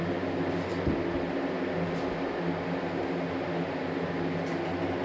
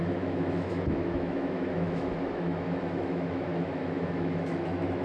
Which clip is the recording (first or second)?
first